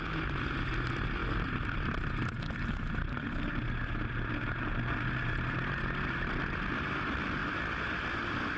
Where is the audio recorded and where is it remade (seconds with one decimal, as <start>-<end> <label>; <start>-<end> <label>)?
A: 0.0-8.6 recorded